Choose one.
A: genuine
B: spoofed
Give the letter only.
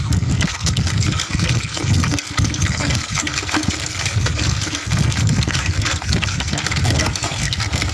B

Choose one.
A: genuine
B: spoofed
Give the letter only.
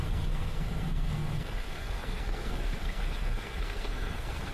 B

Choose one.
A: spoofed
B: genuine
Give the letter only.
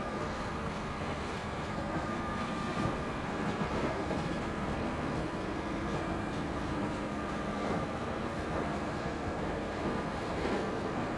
A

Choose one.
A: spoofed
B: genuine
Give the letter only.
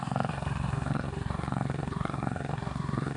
A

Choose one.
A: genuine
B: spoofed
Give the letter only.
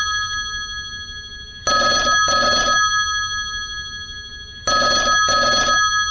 A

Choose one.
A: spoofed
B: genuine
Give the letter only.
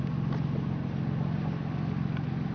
B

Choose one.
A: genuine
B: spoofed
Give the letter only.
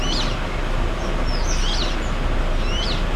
A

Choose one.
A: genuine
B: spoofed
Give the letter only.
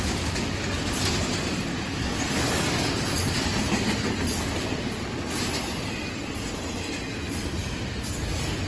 A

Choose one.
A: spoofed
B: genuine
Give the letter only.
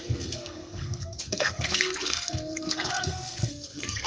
A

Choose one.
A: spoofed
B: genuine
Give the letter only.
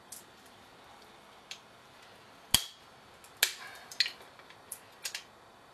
B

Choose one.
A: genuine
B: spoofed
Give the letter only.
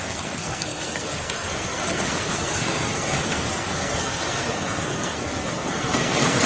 B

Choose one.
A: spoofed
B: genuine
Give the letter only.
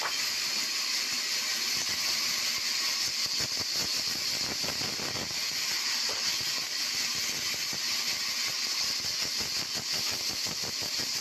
B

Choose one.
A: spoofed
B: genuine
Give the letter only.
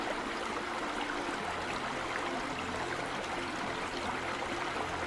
B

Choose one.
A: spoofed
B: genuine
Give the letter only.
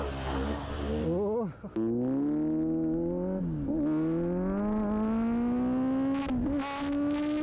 B